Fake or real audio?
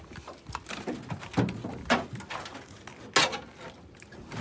real